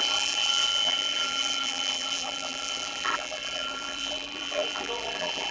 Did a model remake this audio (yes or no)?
yes